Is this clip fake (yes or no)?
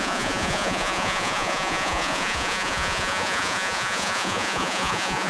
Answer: yes